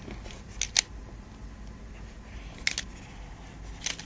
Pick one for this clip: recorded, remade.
recorded